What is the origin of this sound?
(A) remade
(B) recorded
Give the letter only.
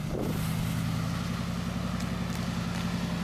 B